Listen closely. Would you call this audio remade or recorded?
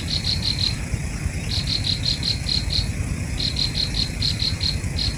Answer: recorded